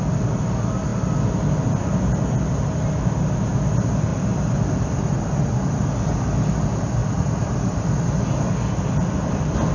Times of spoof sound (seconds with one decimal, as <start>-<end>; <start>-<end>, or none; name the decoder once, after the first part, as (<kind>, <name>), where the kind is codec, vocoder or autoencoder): 4.1-5.6 (vocoder, BigVGAN v2); 7.0-8.1; 9.0-9.7